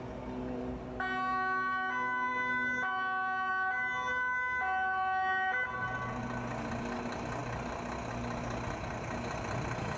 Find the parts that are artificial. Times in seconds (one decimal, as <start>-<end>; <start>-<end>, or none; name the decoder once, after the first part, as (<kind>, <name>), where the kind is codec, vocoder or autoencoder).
none